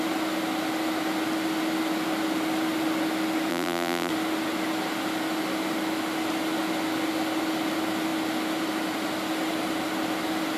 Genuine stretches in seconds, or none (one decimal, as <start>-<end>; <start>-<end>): 0.0-3.5; 4.1-10.6